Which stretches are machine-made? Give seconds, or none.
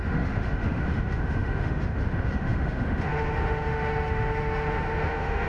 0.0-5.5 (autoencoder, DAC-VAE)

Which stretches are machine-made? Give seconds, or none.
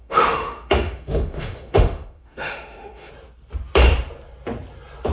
0.0-3.1 (autoencoder, DAC-VAE)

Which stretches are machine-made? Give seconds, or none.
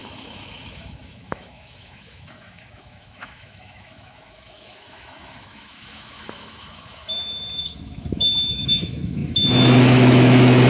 0.0-10.7 (autoencoder, DAC-VAE)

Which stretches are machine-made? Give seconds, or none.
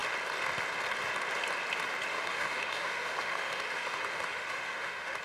2.1-5.2 (autoencoder, DAC-VAE)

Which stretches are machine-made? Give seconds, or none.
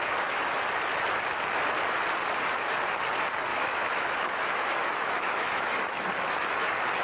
3.5-6.1 (autoencoder, DAC-VAE)